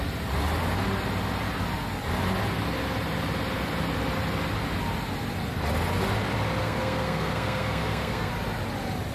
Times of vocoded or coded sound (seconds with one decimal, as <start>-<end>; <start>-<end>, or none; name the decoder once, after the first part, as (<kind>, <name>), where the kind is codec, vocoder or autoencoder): 6.6-8.3 (codec, SNAC)